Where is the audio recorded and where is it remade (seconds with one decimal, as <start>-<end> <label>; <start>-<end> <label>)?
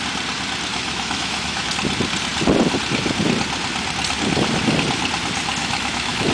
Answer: 0.0-0.7 recorded; 0.7-1.7 remade; 1.7-5.6 recorded; 5.6-6.3 remade